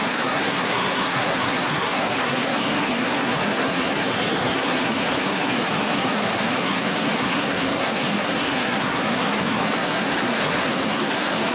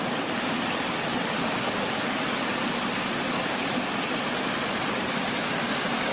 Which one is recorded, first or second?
second